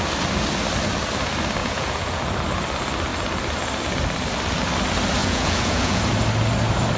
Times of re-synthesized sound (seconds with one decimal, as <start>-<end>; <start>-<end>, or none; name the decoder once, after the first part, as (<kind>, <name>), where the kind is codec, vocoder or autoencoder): 1.6-2.2 (vocoder, Vocos); 5.2-6.0